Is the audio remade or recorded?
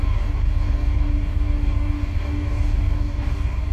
remade